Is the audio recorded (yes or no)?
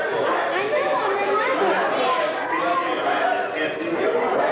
yes